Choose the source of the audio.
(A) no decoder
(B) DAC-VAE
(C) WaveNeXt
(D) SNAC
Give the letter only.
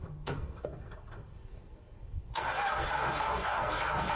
D